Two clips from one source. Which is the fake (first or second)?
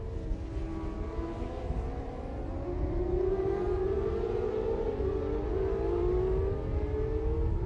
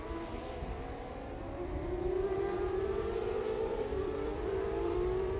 second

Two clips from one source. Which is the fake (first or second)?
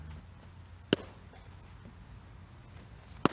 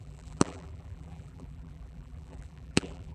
second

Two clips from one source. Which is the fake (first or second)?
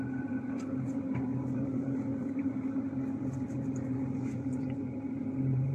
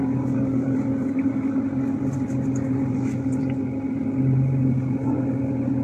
first